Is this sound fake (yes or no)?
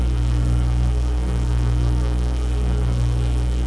yes